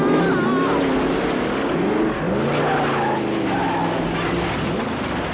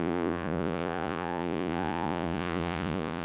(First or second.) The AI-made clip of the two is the second